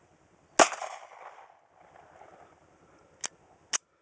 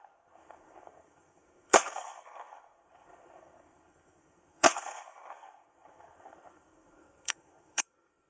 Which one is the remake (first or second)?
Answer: second